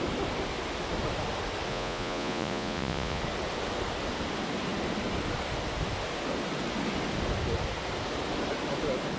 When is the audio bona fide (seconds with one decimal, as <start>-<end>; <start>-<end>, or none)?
0.0-1.7; 3.2-9.2